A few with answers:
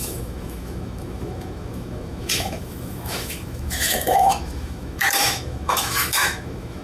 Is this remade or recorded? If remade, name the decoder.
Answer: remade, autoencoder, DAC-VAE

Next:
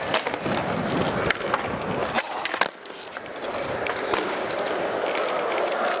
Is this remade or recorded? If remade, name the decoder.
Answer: recorded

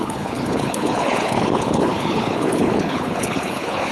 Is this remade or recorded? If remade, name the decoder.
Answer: remade, codec, HILCodec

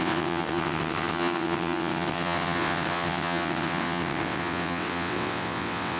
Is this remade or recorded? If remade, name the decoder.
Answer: remade, vocoder, WaveNeXt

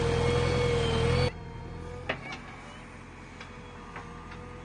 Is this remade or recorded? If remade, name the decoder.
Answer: recorded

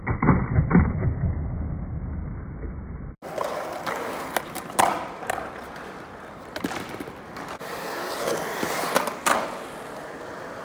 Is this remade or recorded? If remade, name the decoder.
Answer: recorded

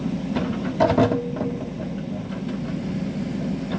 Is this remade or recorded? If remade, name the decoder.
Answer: recorded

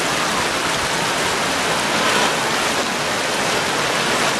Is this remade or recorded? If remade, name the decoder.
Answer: recorded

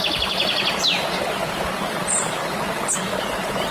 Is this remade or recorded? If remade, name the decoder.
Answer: recorded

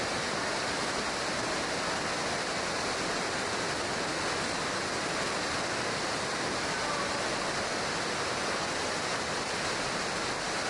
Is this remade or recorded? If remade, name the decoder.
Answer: recorded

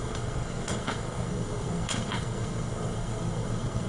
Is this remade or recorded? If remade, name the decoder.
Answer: remade, codec, SNAC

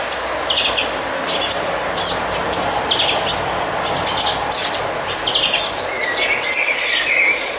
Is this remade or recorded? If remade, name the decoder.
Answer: recorded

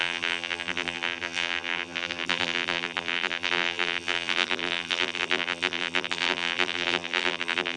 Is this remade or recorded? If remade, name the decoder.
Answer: remade, vocoder, BigVGAN v2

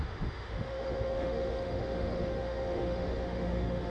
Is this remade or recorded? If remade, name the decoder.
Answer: remade, autoencoder, DAC-VAE